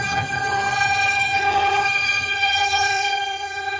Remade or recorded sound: remade